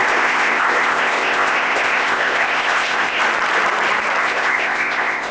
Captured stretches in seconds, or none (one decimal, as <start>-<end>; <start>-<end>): 3.2-4.2